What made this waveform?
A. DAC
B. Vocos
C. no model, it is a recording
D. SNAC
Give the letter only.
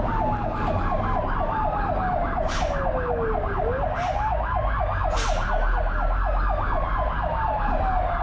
C